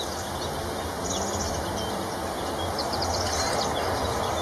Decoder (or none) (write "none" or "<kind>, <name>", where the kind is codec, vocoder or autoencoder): none